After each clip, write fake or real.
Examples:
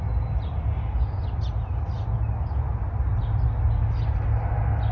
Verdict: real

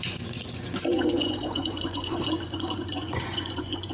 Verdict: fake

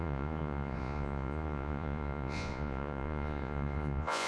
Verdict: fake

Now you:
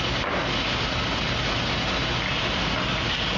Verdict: real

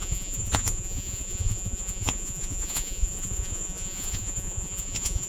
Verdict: fake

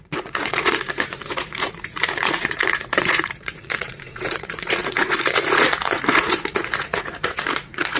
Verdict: fake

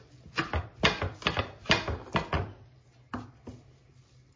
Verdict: real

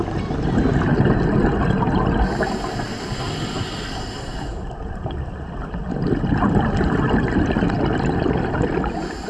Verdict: real